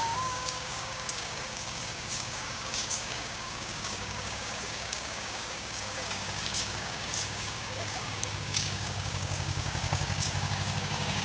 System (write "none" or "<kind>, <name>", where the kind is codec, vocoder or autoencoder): codec, DAC